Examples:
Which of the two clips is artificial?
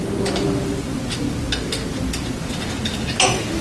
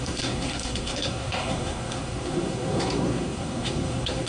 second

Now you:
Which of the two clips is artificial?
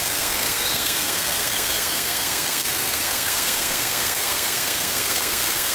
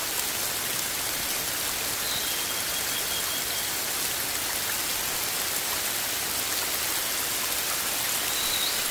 first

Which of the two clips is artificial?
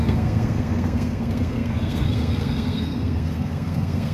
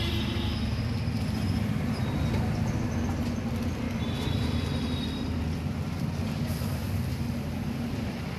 first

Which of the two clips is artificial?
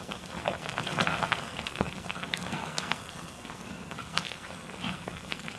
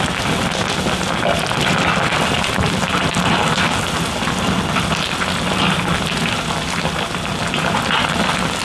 first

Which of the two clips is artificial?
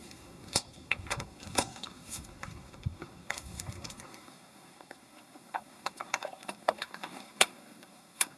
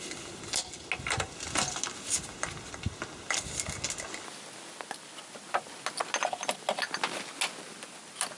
first